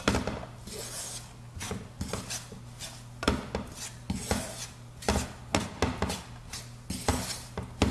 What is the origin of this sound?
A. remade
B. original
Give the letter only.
B